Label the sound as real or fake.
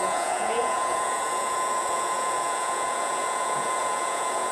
fake